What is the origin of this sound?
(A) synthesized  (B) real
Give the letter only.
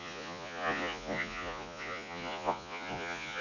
A